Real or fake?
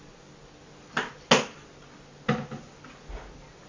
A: real